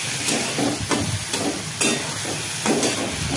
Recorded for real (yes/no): yes